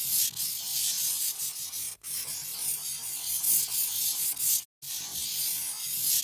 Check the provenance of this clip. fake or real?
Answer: real